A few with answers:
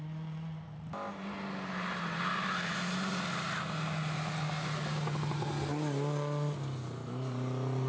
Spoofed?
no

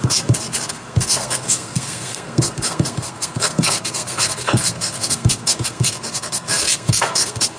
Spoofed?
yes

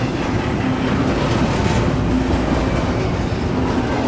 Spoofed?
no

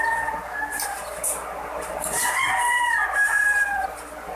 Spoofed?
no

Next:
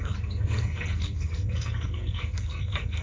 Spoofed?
yes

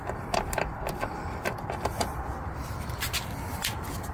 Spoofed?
no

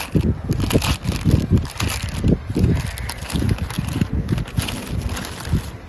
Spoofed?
no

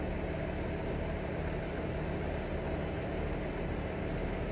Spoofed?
no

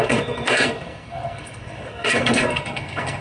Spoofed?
yes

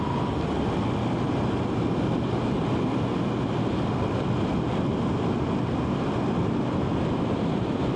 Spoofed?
no